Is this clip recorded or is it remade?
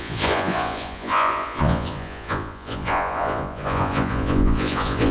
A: remade